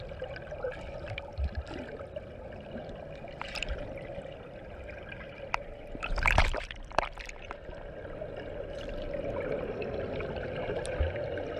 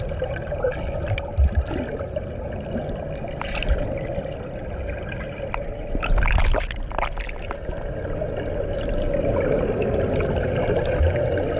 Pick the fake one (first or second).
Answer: first